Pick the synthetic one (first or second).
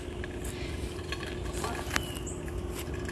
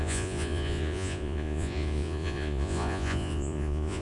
second